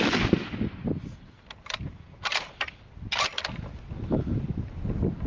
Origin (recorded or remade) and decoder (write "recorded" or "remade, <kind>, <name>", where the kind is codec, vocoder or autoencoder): recorded